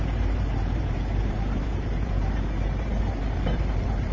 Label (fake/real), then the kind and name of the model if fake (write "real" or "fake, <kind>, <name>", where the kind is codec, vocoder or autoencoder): fake, vocoder, BigVGAN v2